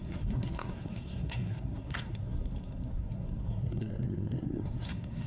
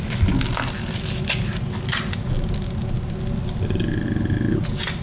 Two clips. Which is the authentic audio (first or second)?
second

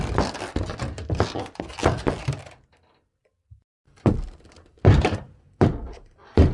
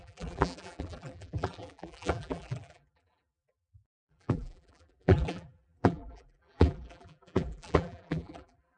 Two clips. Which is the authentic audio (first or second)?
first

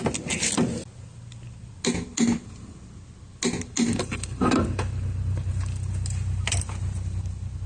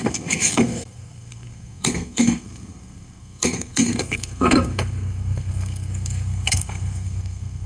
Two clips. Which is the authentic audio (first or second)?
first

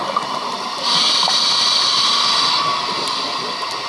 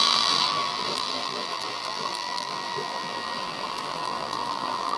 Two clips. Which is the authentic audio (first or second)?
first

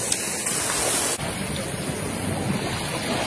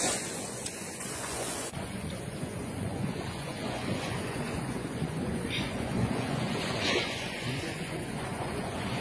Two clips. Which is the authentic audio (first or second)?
first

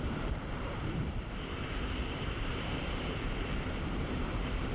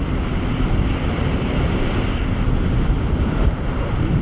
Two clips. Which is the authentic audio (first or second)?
second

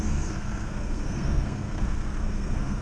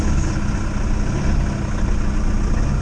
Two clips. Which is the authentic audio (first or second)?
second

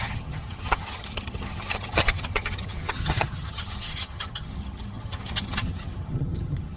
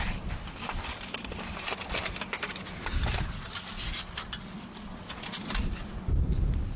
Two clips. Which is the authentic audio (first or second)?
second